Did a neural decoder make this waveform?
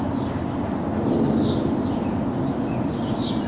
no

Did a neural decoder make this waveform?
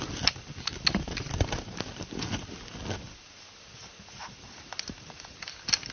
no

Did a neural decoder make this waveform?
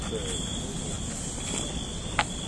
no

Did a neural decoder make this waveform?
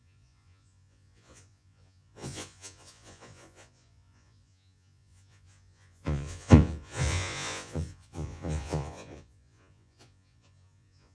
yes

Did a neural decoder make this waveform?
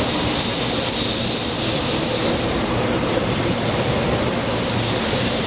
no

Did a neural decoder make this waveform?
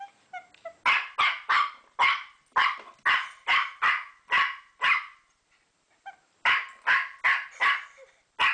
no